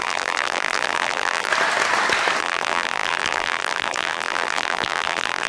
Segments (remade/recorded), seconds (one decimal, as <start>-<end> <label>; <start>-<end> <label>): 0.0-1.5 remade; 1.5-2.4 recorded; 2.4-5.5 remade

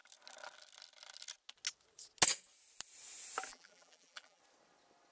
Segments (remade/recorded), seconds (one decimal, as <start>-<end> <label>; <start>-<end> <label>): 0.0-3.5 recorded; 3.5-4.4 remade; 4.4-5.1 recorded

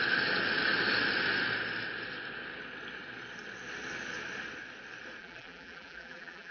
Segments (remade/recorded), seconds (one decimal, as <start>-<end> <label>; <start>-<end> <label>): 0.0-5.2 recorded; 5.2-6.5 remade

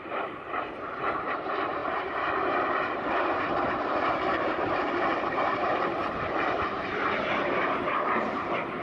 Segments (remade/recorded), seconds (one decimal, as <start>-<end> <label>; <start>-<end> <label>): 0.0-1.8 remade; 1.8-3.7 recorded; 3.7-8.8 remade

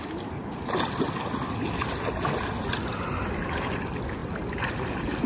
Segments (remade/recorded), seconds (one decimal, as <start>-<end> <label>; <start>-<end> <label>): 0.0-5.3 recorded

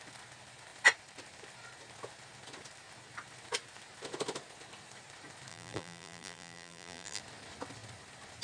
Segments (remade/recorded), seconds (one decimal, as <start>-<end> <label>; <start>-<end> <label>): 0.0-5.5 recorded; 5.5-7.2 remade; 7.2-8.4 recorded

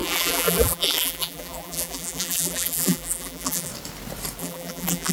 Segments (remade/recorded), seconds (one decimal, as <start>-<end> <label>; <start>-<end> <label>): 0.0-3.7 remade; 3.7-4.4 recorded; 4.4-5.1 remade